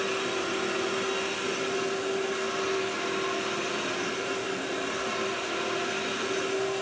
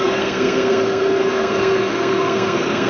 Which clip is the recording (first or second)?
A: first